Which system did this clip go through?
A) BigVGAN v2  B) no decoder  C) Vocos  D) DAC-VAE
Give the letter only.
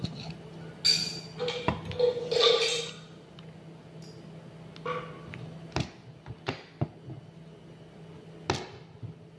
B